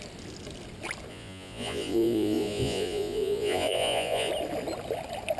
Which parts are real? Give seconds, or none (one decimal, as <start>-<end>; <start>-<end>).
0.0-1.1; 4.3-5.4